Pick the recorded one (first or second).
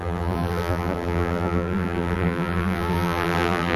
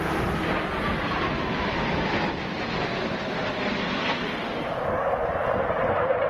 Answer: second